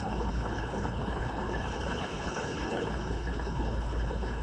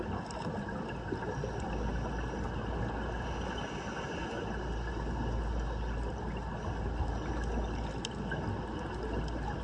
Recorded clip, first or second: second